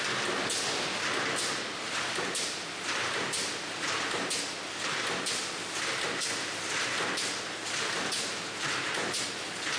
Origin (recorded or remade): recorded